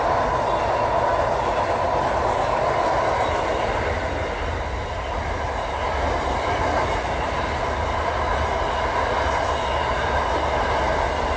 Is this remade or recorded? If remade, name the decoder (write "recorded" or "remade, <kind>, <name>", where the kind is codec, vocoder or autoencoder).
recorded